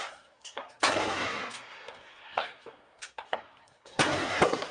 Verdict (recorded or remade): remade